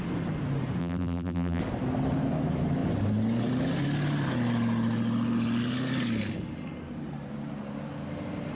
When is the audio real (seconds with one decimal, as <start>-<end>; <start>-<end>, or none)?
0.0-0.8; 1.6-8.6